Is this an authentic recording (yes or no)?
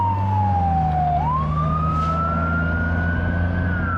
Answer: yes